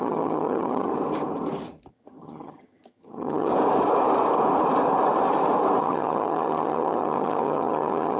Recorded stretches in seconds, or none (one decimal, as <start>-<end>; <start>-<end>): 0.9-1.9; 3.5-5.8